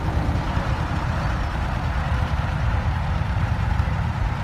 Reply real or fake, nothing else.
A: fake